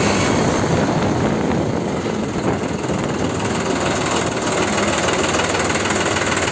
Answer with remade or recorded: recorded